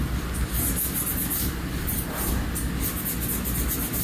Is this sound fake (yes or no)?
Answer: no